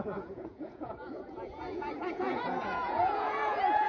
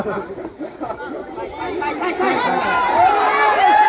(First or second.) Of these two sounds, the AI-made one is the first